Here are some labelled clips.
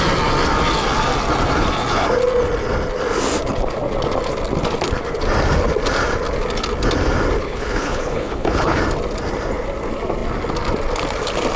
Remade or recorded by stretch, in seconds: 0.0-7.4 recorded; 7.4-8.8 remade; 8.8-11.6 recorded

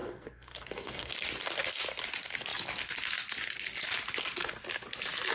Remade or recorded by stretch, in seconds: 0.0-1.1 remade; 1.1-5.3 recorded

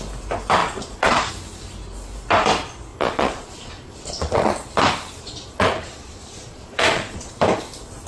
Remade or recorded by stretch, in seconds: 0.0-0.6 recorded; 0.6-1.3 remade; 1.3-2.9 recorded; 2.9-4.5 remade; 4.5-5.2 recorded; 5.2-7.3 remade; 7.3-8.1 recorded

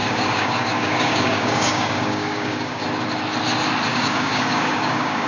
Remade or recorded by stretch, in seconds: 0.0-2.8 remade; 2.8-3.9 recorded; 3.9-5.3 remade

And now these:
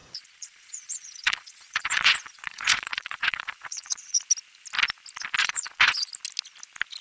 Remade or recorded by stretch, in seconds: 0.0-4.2 remade; 4.2-5.4 recorded; 5.4-6.1 remade; 6.1-7.0 recorded